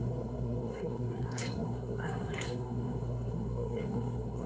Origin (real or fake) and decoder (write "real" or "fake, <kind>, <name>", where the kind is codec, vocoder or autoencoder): fake, codec, SNAC